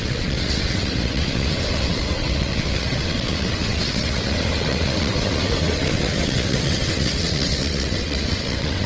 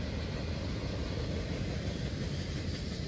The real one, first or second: second